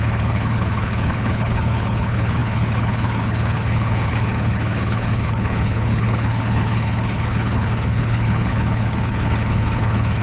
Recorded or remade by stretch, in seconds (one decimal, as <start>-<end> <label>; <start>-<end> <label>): 0.0-10.2 remade